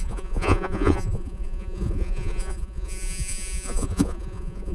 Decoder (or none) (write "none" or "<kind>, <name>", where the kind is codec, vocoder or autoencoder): vocoder, Vocos